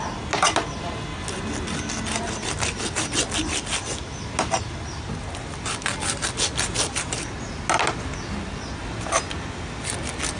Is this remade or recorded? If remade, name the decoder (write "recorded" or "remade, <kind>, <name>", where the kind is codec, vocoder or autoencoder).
recorded